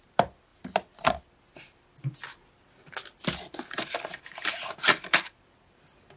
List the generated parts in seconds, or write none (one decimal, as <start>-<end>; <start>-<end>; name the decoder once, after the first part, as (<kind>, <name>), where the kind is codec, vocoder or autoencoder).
none